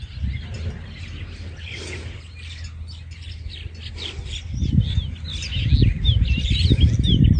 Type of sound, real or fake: real